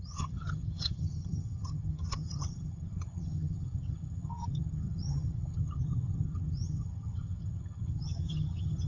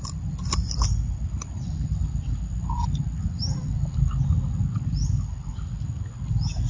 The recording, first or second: second